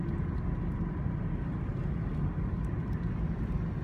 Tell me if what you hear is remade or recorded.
recorded